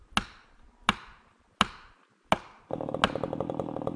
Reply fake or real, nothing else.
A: real